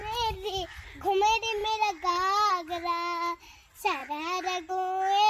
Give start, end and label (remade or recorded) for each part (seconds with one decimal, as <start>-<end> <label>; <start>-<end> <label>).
0.0-5.3 recorded